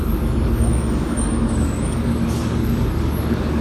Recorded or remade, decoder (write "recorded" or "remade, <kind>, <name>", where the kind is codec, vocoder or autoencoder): remade, codec, DAC